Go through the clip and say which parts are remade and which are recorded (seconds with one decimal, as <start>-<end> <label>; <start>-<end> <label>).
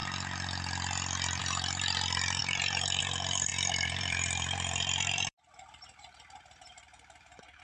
0.0-1.4 recorded; 1.4-7.6 remade